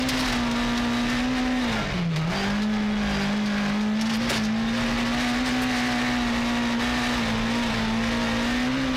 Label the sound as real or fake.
real